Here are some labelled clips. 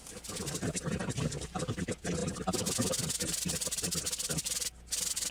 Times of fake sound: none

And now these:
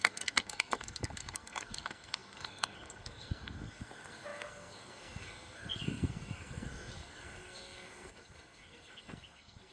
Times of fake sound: 0.0-9.7 (codec, SNAC)

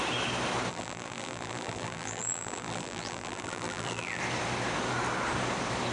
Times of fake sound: 0.7-4.2 (vocoder, BigVGAN v2)

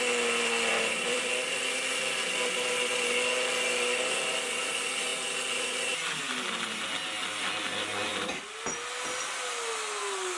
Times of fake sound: 0.7-1.6 (vocoder, BigVGAN v2); 5.1-6.9

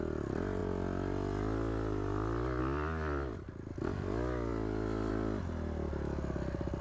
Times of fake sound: none